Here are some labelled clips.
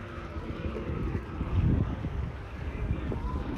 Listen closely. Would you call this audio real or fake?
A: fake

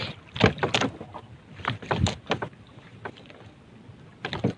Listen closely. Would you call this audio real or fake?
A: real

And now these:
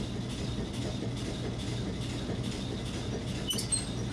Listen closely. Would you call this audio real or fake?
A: real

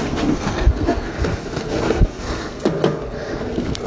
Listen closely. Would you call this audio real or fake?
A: fake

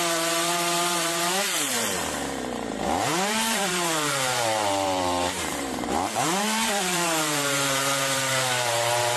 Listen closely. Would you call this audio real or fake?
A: fake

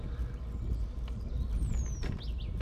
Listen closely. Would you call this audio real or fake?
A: real